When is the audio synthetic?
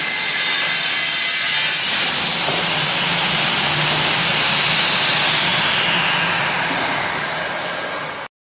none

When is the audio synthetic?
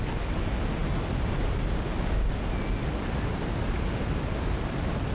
none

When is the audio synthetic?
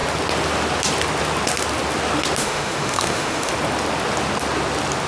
2.4-3.5 (autoencoder, DAC-VAE)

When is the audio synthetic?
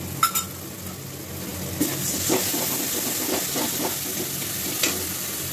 none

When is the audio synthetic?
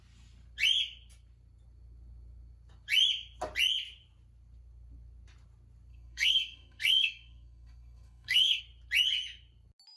5.9-8.6 (codec, SNAC)